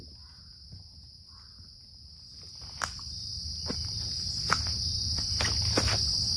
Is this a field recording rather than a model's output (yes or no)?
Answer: yes